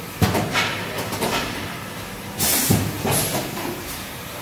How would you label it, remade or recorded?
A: remade